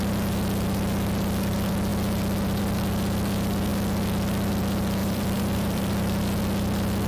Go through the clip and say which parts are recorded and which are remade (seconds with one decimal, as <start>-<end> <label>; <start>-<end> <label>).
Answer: 0.0-5.0 recorded; 5.0-6.2 remade; 6.2-7.1 recorded